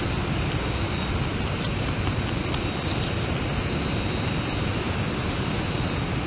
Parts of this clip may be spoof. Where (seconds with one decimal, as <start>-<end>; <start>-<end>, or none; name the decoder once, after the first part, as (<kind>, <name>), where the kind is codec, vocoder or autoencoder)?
0.0-2.9 (vocoder, BigVGAN v2); 5.5-6.3